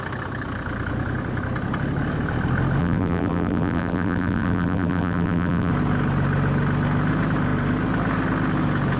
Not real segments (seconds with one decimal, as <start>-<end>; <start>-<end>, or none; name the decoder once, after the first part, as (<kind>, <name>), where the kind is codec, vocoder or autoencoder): 2.8-5.7 (vocoder, BigVGAN v2)